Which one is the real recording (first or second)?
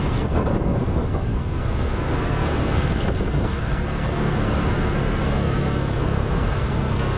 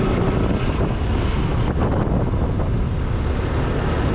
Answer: second